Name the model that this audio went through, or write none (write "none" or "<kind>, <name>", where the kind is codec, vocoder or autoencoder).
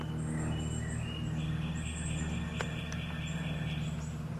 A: none